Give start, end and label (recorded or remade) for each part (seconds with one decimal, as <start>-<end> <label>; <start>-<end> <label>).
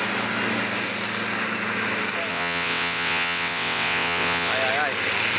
0.0-2.3 recorded; 2.3-4.5 remade; 4.5-5.4 recorded